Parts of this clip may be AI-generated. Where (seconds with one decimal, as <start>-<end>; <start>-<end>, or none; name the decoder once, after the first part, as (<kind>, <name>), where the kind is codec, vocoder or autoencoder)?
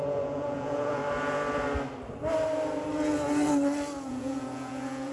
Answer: 0.0-1.0 (vocoder, Vocos); 4.1-5.1